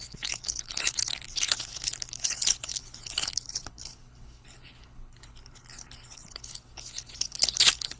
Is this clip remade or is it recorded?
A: remade